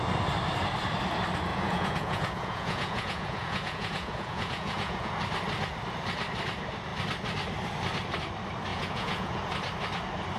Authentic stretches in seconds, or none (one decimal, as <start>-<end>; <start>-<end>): 0.0-1.5; 5.1-8.7; 9.4-10.4